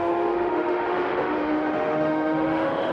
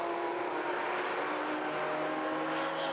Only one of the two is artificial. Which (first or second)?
first